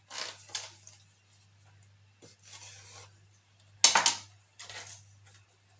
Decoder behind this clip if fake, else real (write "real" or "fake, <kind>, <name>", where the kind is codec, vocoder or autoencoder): real